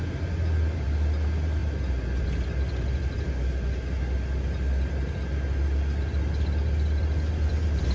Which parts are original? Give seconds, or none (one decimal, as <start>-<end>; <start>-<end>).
0.0-7.9